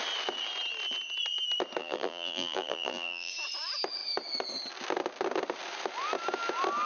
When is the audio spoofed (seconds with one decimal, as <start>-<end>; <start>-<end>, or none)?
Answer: 1.8-3.3